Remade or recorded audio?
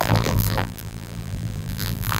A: remade